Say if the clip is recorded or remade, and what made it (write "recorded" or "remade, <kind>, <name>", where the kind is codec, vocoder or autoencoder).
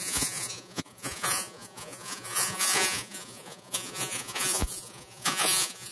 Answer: remade, vocoder, Vocos